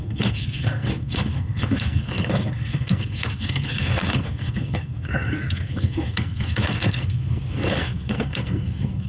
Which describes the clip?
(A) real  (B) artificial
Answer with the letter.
B